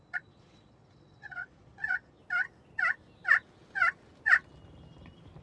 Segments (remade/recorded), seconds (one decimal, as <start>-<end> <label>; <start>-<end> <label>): 0.0-2.2 remade; 2.2-5.4 recorded